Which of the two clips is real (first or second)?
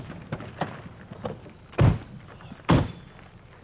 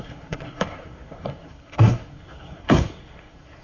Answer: first